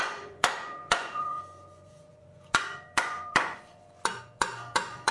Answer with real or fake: fake